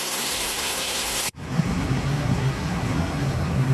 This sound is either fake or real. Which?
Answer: fake